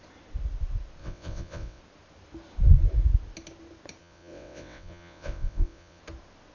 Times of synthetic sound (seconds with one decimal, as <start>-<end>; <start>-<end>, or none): 1.0-1.8; 4.0-6.0